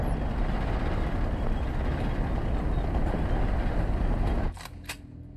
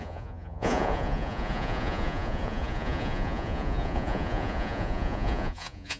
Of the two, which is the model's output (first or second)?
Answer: second